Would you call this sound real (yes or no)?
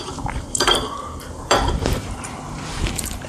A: no